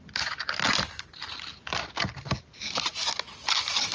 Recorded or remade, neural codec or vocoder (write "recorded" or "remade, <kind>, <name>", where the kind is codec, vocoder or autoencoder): recorded